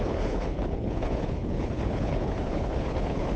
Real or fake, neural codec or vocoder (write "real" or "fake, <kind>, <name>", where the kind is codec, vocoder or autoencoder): fake, codec, HILCodec